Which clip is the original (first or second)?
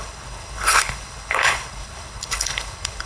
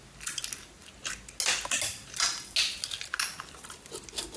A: second